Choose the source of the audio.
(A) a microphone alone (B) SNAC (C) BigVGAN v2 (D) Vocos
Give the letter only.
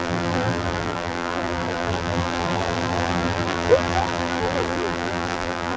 C